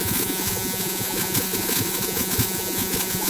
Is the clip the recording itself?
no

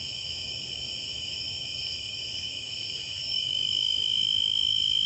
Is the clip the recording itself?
no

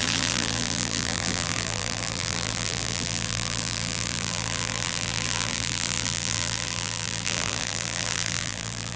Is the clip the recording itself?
no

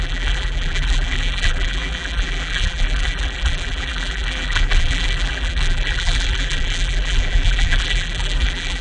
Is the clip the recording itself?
no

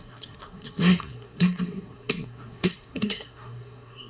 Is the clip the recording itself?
no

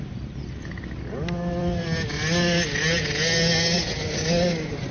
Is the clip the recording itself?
yes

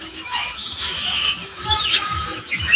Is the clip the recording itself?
no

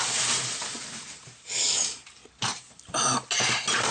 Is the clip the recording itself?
no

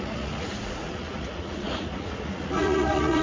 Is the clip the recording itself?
no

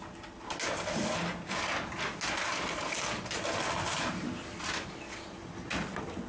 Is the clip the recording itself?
yes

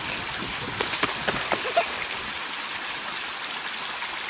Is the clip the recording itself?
yes